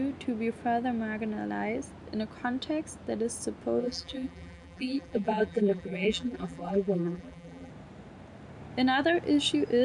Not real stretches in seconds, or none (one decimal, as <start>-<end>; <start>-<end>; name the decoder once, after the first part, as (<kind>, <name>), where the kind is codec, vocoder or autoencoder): 3.8-7.7 (vocoder, BigVGAN v2)